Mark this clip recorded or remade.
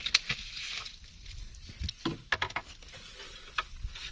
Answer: recorded